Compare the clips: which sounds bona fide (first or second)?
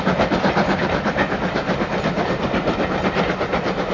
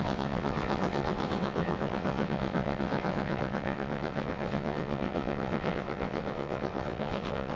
first